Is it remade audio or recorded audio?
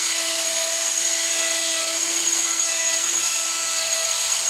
remade